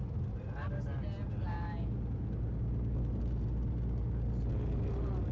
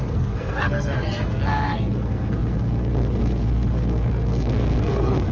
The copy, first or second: second